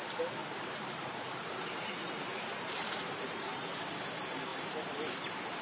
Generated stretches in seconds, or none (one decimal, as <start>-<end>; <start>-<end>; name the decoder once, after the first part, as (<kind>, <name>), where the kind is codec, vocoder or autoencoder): 0.4-3.8 (vocoder, BigVGAN v2)